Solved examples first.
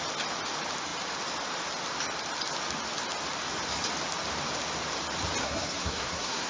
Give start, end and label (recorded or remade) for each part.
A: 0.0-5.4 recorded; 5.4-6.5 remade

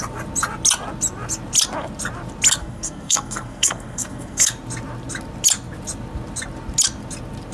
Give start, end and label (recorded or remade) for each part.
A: 0.0-2.6 recorded; 2.6-4.5 remade; 4.5-7.5 recorded